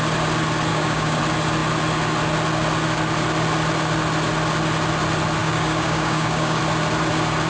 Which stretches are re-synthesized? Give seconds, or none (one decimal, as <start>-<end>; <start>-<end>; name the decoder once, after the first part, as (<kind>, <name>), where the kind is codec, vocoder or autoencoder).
0.7-1.2 (codec, DAC); 5.4-6.6